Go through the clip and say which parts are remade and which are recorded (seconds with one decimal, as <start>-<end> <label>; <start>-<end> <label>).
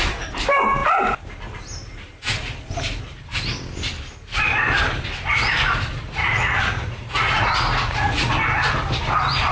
0.0-6.2 recorded; 6.2-8.3 remade; 8.3-9.5 recorded